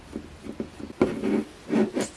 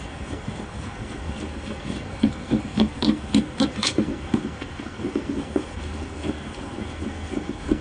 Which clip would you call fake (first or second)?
second